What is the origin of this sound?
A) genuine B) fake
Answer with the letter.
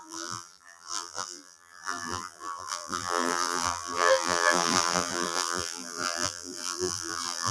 B